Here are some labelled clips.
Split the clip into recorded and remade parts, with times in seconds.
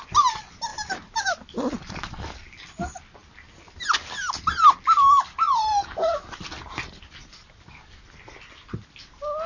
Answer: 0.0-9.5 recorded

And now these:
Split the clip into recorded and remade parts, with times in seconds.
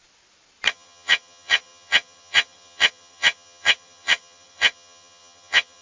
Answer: 0.0-0.7 recorded; 0.7-5.8 remade